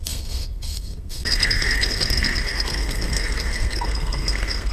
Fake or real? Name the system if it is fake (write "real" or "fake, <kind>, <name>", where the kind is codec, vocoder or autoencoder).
fake, codec, SNAC